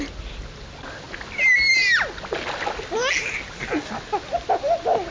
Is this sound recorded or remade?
recorded